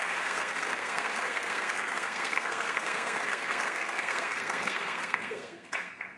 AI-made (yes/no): yes